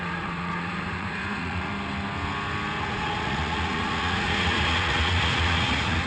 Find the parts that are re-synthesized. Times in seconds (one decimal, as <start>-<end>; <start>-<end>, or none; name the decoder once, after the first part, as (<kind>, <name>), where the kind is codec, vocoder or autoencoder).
0.0-1.7 (vocoder, Vocos); 2.8-6.1